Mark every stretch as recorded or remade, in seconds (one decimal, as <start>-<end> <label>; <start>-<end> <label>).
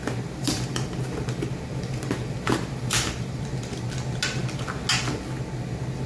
0.0-3.7 remade; 3.7-6.1 recorded